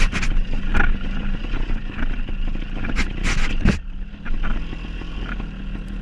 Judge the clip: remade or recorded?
recorded